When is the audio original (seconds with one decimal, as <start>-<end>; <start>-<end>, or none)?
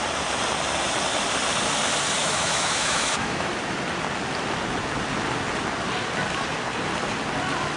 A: 0.0-2.2; 3.5-7.8